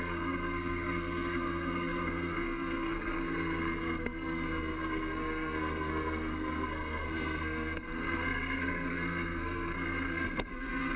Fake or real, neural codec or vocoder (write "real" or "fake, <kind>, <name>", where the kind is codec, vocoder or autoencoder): fake, codec, SNAC